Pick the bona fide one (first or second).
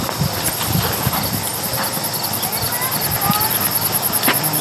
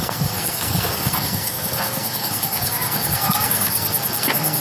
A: first